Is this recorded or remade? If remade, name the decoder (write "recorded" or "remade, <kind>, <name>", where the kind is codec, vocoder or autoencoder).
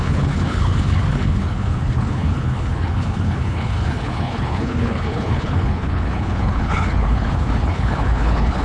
remade, codec, HILCodec